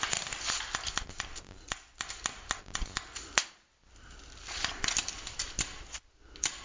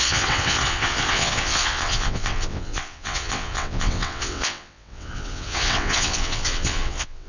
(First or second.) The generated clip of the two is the second